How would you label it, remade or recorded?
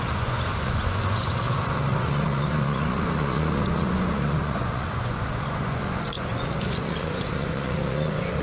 remade